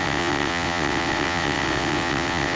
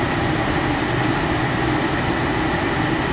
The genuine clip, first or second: second